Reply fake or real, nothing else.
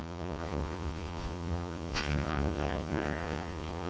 fake